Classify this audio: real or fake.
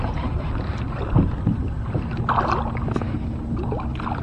real